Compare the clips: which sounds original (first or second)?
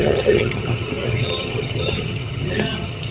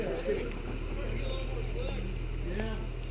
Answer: second